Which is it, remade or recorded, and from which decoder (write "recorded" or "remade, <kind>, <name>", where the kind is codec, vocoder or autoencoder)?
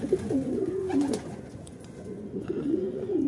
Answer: remade, vocoder, Vocos